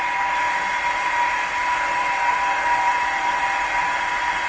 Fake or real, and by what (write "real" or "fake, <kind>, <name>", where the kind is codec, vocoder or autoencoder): real